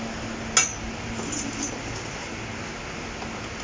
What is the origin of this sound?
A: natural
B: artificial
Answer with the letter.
A